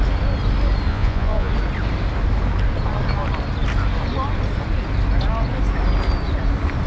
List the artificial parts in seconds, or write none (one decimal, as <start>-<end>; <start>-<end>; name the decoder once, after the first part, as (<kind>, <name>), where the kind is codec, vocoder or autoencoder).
0.9-1.5 (vocoder, Vocos)